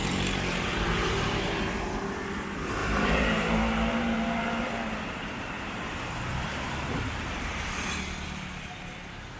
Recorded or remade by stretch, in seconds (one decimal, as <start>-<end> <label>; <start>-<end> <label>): 0.0-1.4 remade; 1.4-2.8 recorded; 2.8-7.6 remade; 7.6-9.4 recorded